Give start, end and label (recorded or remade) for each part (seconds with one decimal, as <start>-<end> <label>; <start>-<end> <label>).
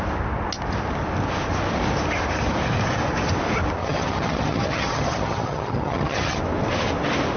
0.0-3.8 recorded; 3.8-6.4 remade; 6.4-7.4 recorded